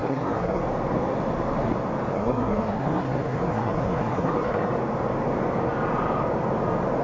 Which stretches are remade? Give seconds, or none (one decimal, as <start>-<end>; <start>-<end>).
0.0-0.6; 2.1-4.7